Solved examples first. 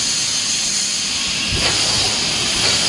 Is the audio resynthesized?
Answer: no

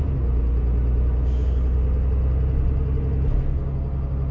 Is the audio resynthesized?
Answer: no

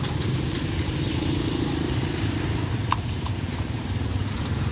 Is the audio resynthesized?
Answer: yes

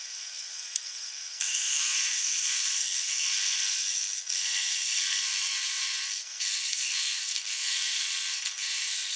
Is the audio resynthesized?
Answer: yes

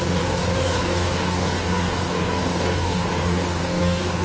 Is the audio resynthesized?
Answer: yes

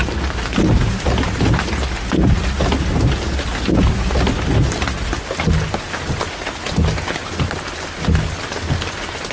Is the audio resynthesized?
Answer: no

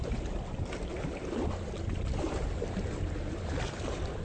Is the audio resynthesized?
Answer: no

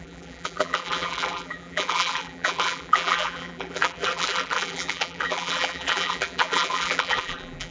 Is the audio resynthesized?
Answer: yes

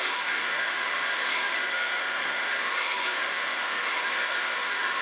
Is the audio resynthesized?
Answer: yes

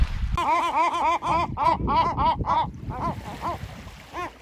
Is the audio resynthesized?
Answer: no